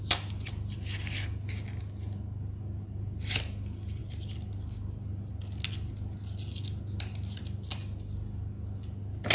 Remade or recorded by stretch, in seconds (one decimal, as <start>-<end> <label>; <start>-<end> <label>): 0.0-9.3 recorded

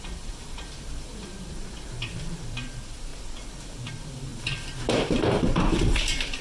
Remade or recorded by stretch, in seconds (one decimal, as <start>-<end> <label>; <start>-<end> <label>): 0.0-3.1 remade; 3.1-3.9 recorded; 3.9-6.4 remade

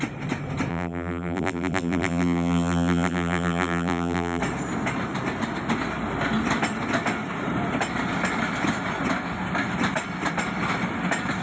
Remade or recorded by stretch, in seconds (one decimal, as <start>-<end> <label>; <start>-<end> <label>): 0.0-0.7 recorded; 0.7-4.4 remade; 4.4-11.4 recorded

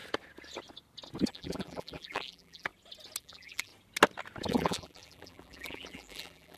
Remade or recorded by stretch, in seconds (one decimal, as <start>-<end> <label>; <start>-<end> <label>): 0.0-1.3 recorded; 1.3-2.7 remade; 2.7-3.2 recorded; 3.2-3.7 remade; 3.7-4.5 recorded; 4.5-6.6 remade

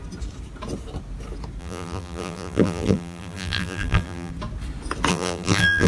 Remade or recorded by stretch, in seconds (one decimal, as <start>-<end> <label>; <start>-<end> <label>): 0.0-1.6 recorded; 1.6-4.3 remade; 4.3-5.1 recorded; 5.1-5.9 remade

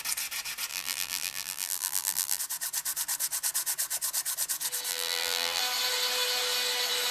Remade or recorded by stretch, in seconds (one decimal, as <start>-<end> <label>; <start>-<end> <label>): 0.0-0.7 recorded; 0.7-2.4 remade; 2.4-4.9 recorded; 4.9-5.6 remade; 5.6-7.1 recorded